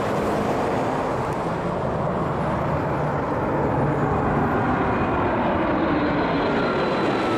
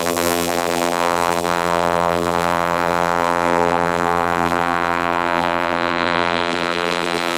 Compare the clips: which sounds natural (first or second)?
first